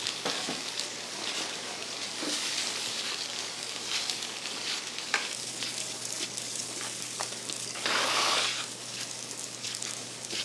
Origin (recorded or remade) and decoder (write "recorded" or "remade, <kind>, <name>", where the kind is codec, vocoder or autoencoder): remade, codec, DAC